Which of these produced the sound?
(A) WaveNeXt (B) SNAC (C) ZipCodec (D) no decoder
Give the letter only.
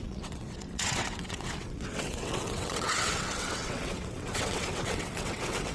A